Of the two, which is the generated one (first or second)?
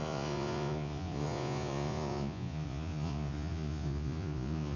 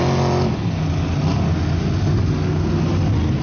first